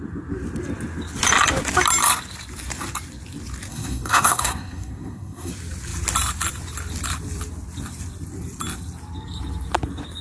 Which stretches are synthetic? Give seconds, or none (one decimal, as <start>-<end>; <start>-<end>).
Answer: 3.7-5.5